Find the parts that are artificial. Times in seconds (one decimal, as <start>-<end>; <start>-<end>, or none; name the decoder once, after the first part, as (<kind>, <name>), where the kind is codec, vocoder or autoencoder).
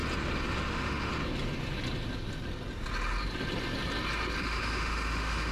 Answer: 0.7-1.1 (autoencoder, DAC-VAE); 4.4-5.5